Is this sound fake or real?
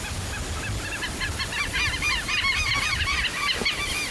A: real